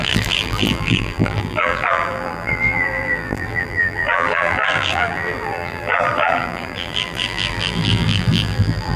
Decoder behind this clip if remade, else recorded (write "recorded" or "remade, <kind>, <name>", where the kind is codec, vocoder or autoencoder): remade, vocoder, BigVGAN v2